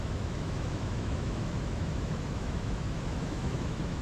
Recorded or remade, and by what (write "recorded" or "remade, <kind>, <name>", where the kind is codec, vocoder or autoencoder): remade, autoencoder, DAC-VAE